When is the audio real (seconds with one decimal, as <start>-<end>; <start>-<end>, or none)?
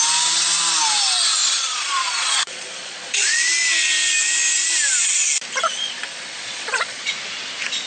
0.0-1.4; 3.5-5.6; 7.0-7.9